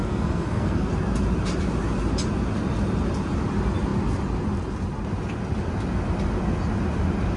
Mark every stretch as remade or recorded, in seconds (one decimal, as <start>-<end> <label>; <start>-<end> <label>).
0.0-0.9 remade; 0.9-7.4 recorded